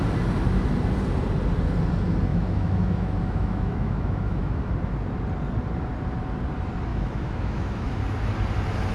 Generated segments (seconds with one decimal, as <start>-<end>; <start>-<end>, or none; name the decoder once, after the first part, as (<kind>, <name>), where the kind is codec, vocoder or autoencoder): 2.3-4.7 (autoencoder, DAC-VAE); 6.9-8.0